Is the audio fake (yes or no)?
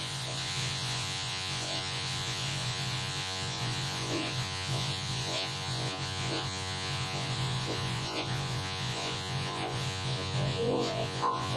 yes